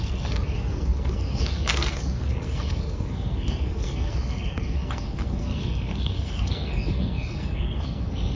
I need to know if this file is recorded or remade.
remade